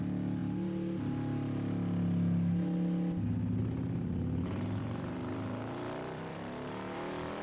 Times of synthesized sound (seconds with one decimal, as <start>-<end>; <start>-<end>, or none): 0.0-0.4; 4.8-7.4